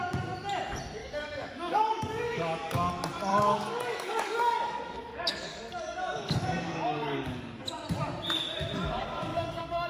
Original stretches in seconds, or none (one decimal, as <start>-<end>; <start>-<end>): 0.0-1.0; 2.9-3.3; 7.6-9.3